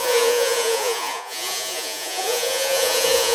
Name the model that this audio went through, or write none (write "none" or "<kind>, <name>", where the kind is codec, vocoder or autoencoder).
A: vocoder, Vocos